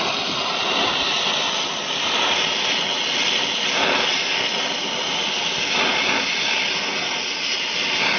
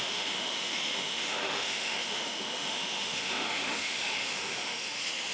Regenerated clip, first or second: second